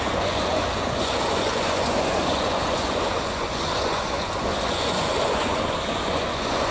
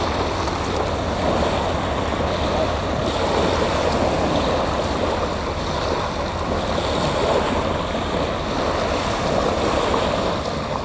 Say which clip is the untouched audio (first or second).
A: second